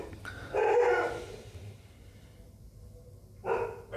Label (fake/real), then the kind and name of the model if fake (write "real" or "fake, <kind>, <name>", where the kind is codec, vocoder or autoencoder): real